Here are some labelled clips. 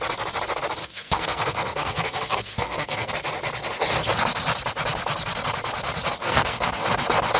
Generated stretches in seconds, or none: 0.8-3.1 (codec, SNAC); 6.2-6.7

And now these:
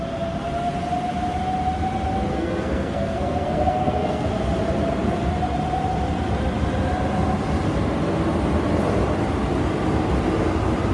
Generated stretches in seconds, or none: 2.3-4.3 (codec, SNAC)

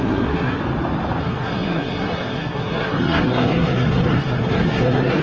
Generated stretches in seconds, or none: 0.0-0.6 (codec, SNAC); 1.2-5.2